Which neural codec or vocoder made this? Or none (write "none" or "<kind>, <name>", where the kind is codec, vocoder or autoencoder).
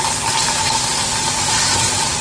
none